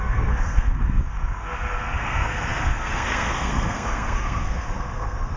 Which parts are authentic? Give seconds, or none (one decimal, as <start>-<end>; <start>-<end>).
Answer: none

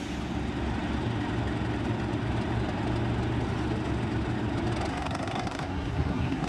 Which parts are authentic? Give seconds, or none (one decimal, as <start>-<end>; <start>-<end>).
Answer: 0.0-4.9

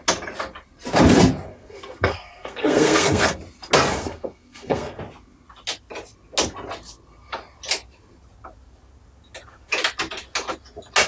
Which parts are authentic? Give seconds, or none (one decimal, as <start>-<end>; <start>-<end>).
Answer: 0.0-1.5; 3.4-3.9; 5.0-11.1

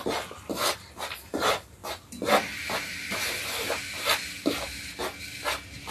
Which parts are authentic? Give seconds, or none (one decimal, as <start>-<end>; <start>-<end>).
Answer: 0.0-5.9

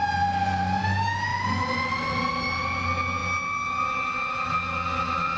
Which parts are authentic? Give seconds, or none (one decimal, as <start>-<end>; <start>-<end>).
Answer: 0.0-1.3; 2.2-5.4

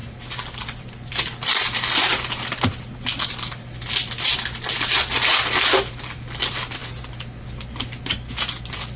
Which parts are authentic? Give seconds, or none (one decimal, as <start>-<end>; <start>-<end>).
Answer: 0.0-9.0

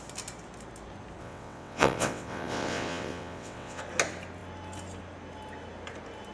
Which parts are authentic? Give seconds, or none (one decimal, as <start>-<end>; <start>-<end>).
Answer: 0.0-1.2; 3.8-6.3